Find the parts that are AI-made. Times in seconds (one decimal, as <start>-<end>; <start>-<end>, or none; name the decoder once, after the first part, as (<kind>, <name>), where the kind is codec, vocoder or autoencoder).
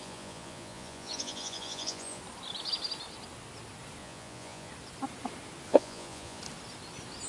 0.0-2.2 (vocoder, Vocos); 4.0-4.7; 5.7-6.4